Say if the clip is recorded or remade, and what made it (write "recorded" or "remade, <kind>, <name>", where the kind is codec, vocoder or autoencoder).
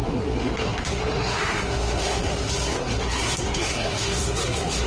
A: remade, codec, SNAC